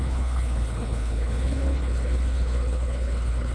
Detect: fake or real fake